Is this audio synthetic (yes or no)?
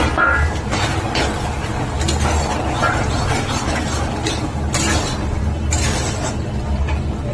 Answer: no